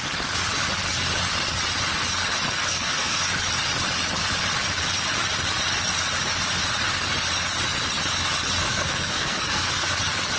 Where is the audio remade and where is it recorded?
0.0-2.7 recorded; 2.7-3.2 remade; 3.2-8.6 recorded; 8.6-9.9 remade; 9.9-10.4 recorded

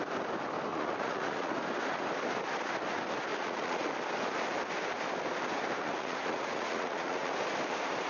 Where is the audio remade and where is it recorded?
0.0-0.7 recorded; 0.7-1.5 remade; 1.5-3.3 recorded; 3.3-3.9 remade; 3.9-5.8 recorded; 5.8-7.3 remade; 7.3-8.1 recorded

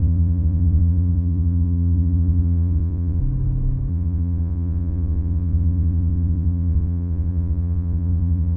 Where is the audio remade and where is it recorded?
0.0-3.2 remade; 3.2-3.9 recorded; 3.9-8.6 remade

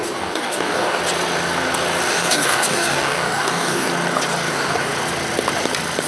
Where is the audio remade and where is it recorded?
0.0-1.0 remade; 1.0-2.1 recorded; 2.1-3.9 remade; 3.9-4.5 recorded; 4.5-4.9 remade; 4.9-6.1 recorded

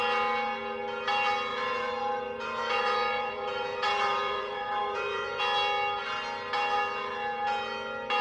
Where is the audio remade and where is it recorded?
0.0-1.5 recorded; 1.5-5.4 remade; 5.4-8.2 recorded

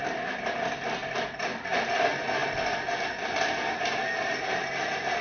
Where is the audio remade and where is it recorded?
0.0-5.2 recorded